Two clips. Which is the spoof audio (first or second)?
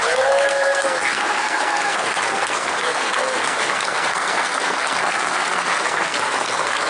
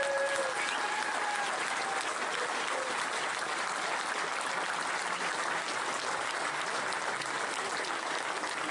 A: first